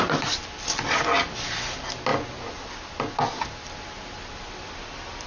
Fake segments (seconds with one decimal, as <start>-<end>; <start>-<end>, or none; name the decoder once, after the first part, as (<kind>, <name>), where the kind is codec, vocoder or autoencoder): none